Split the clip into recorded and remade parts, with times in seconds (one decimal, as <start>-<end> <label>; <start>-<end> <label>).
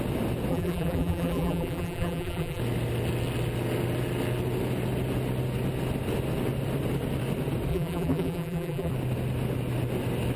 0.0-0.5 recorded; 0.5-2.6 remade; 2.6-7.7 recorded; 7.7-8.9 remade; 8.9-10.4 recorded